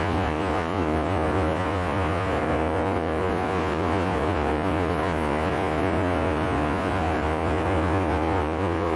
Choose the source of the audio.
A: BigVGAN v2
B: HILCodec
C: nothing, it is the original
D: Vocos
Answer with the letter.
D